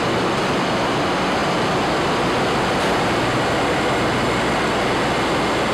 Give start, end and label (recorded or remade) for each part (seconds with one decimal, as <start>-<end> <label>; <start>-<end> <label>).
0.0-5.7 recorded